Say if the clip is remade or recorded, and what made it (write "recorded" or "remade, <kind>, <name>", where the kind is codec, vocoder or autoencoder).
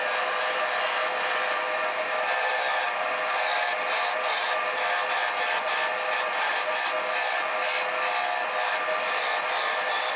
recorded